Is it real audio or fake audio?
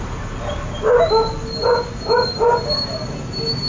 real